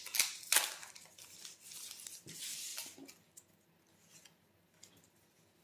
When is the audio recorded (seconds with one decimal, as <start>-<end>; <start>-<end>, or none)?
0.0-5.6